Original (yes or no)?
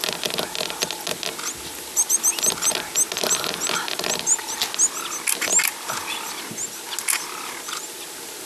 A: yes